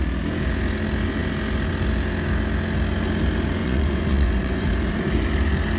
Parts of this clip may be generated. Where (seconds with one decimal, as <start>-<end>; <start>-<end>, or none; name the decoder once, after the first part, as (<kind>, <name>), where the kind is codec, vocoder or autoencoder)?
3.6-4.7 (vocoder, Vocos)